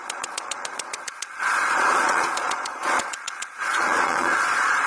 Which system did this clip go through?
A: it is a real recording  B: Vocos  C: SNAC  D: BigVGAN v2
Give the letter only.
B